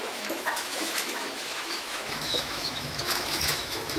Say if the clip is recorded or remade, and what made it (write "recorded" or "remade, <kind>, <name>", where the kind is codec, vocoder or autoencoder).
remade, autoencoder, DAC-VAE